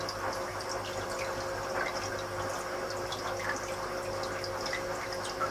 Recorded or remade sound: recorded